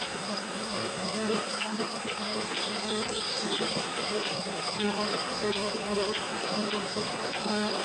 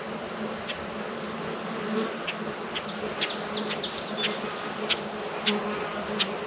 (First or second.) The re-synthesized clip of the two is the first